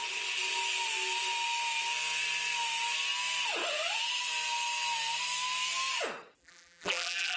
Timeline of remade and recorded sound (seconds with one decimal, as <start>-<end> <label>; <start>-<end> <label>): 0.0-6.4 recorded; 6.4-7.4 remade